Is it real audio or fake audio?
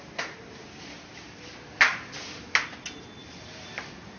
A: real